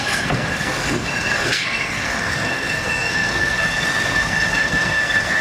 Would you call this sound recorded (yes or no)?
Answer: no